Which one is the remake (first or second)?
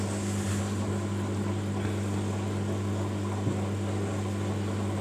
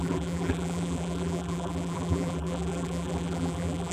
second